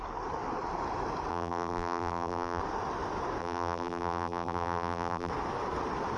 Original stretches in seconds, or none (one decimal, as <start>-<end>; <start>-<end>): 0.0-1.3; 2.6-3.4; 5.3-6.2